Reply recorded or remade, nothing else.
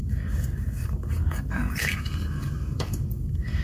remade